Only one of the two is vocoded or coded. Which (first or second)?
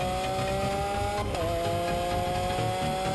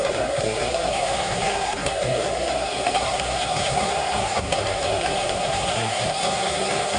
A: second